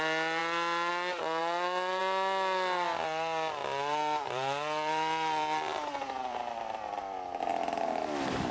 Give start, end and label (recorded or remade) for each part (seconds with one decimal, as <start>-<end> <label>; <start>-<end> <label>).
0.0-1.4 recorded; 1.4-2.0 remade; 2.0-3.6 recorded; 3.6-7.5 remade; 7.5-8.5 recorded